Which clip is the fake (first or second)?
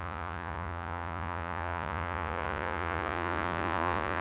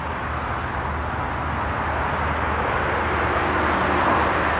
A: first